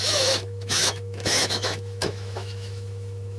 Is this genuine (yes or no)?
no